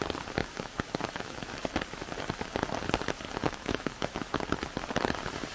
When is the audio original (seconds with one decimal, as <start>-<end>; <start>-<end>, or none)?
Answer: 0.0-0.4; 1.5-3.4; 4.4-5.5

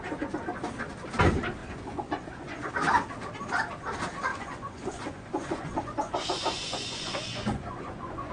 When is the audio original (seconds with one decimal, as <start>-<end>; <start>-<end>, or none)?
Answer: 0.0-1.6; 2.7-4.3

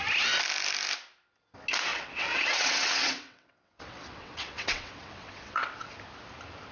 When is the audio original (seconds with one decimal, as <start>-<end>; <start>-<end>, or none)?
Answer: 0.0-1.9; 5.9-6.7

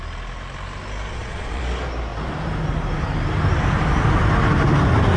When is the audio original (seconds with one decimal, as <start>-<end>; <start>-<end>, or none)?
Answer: 0.0-1.1; 1.6-5.2

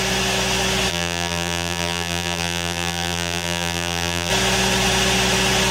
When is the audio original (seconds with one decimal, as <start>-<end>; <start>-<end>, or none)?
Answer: 0.0-0.9; 4.3-5.7

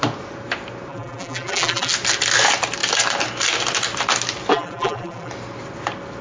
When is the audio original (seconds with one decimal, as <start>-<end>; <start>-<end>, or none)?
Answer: 0.0-0.9; 1.9-4.5; 5.3-6.2